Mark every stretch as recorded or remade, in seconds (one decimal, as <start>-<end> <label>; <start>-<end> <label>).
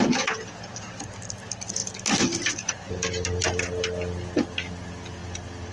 0.0-5.7 recorded